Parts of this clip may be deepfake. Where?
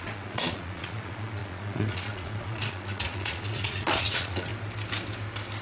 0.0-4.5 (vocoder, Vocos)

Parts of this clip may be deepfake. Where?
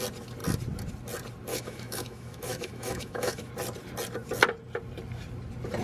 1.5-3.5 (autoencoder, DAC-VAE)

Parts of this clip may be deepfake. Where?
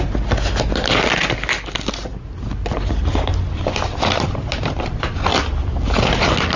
none